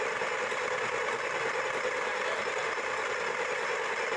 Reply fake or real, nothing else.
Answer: real